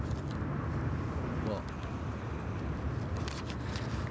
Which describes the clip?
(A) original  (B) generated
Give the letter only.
A